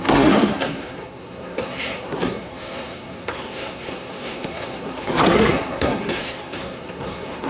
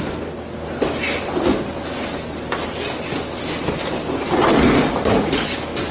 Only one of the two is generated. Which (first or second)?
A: first